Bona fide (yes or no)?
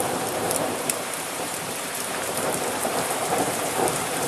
no